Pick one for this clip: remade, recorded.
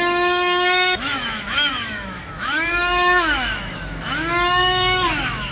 remade